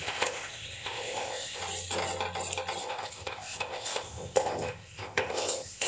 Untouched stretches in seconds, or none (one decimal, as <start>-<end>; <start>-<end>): 1.6-2.8

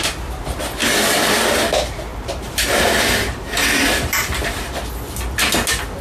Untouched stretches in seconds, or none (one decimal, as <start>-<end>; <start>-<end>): 0.0-2.1; 4.7-6.0

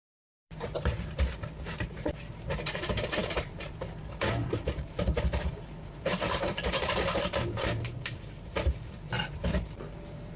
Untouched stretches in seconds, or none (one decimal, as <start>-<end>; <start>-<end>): none